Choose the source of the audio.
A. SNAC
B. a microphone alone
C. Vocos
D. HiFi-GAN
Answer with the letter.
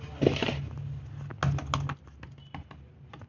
B